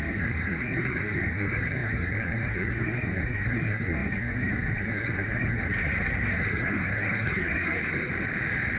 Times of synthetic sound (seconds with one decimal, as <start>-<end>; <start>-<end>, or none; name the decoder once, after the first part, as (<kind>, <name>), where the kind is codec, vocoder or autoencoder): 0.0-8.1 (codec, SNAC)